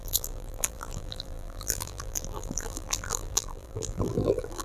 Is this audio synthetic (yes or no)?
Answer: yes